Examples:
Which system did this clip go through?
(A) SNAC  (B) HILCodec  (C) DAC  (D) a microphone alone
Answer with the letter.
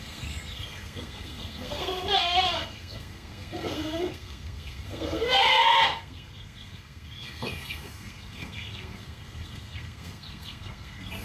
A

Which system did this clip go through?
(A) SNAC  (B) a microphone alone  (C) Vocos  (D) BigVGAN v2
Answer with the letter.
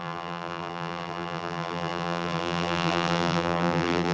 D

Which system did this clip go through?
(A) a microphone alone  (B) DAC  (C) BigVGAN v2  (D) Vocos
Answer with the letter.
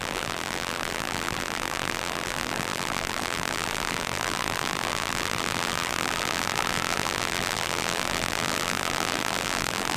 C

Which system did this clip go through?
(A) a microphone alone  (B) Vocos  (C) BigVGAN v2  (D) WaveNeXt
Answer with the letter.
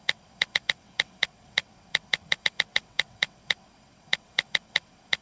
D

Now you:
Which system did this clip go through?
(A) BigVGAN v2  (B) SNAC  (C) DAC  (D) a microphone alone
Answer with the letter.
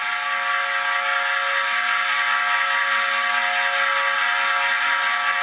D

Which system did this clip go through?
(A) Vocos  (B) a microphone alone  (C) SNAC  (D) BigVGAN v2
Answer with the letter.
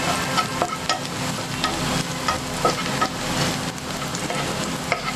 B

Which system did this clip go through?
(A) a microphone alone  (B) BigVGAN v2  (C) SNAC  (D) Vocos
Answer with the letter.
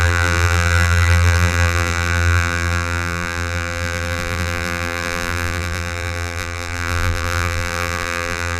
B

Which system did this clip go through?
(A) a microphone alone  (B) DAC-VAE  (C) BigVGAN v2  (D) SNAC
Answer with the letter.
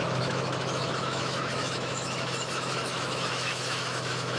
B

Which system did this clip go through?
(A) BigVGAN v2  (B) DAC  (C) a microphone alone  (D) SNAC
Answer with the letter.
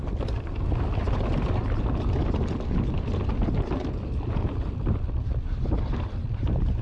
C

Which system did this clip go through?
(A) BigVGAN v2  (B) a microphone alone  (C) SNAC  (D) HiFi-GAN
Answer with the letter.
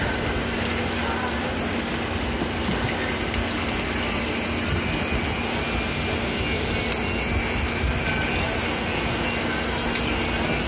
B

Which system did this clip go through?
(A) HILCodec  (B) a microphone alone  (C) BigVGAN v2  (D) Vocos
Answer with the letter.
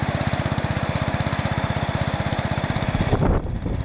C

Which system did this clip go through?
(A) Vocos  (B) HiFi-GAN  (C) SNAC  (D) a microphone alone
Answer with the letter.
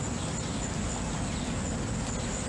D